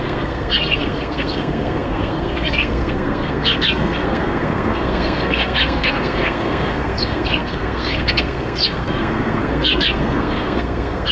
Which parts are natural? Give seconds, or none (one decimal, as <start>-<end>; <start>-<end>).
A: none